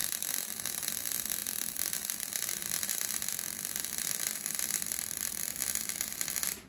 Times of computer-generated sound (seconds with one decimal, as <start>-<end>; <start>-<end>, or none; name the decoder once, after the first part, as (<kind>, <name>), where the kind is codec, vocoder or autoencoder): 0.0-6.7 (vocoder, BigVGAN v2)